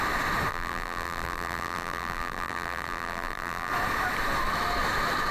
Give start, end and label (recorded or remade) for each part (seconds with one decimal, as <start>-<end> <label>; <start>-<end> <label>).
0.0-0.5 recorded; 0.5-3.7 remade; 3.7-5.3 recorded